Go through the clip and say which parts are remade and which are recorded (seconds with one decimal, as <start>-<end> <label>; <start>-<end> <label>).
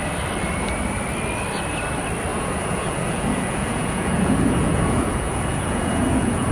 0.0-2.3 recorded; 2.3-6.5 remade